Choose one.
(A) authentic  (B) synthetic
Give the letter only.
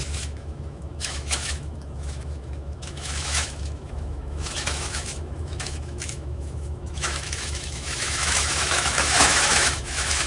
B